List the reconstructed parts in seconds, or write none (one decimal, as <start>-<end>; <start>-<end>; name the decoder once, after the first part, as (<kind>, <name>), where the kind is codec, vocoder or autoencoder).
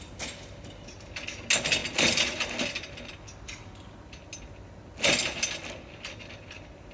none